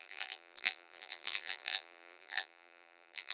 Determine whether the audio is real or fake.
fake